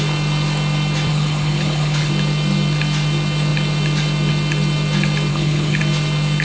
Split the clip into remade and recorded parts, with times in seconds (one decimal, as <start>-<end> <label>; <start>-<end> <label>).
0.0-1.1 recorded; 1.1-2.1 remade; 2.1-5.3 recorded; 5.3-5.8 remade; 5.8-6.4 recorded